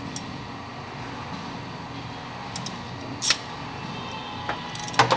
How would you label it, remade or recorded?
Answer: recorded